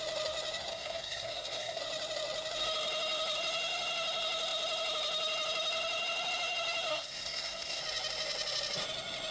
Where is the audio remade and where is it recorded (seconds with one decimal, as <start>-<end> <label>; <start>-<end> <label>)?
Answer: 0.0-0.7 recorded; 0.7-1.8 remade; 1.8-6.9 recorded; 6.9-7.8 remade; 7.8-9.3 recorded